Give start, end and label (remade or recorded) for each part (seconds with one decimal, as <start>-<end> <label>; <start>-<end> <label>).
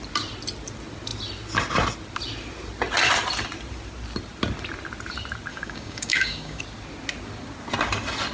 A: 0.0-5.5 recorded; 5.5-6.6 remade; 6.6-8.3 recorded